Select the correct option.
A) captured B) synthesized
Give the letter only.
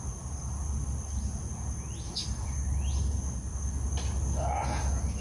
A